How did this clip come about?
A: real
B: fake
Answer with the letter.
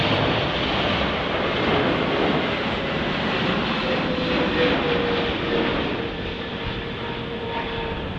A